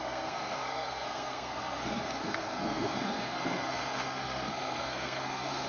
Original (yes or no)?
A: no